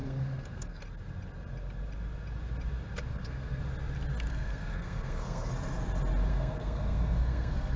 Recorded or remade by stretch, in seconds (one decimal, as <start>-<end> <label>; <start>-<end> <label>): 0.0-0.8 remade; 0.8-3.1 recorded; 3.1-3.6 remade; 3.6-4.3 recorded; 4.3-5.5 remade; 5.5-6.3 recorded; 6.3-7.8 remade